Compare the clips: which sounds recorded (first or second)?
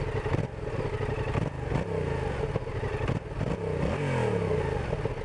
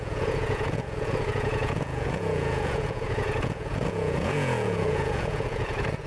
first